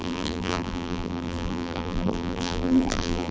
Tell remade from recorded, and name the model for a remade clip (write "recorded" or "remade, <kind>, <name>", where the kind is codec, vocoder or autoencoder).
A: remade, vocoder, BigVGAN v2